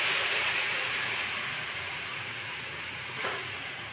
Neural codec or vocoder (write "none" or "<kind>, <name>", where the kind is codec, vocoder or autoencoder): vocoder, Vocos